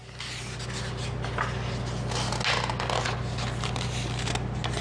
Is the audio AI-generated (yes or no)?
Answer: no